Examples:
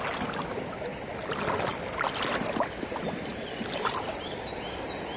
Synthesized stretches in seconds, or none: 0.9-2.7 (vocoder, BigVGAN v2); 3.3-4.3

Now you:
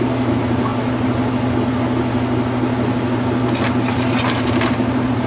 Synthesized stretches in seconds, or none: 0.0-0.7 (vocoder, BigVGAN v2); 3.9-5.3

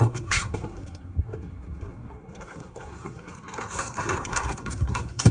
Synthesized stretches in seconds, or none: 0.0-5.3 (codec, SNAC)

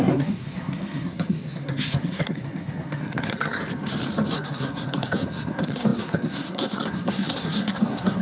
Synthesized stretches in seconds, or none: 0.0-3.6 (codec, SNAC); 4.3-8.2

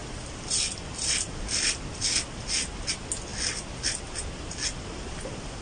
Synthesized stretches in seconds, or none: none